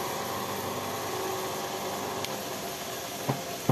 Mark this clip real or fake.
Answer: real